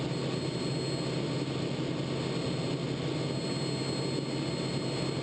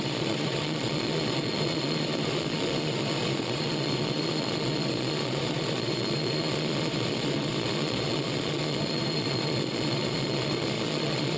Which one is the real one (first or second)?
first